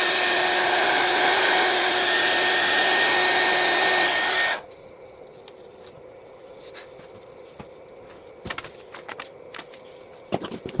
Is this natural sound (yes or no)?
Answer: yes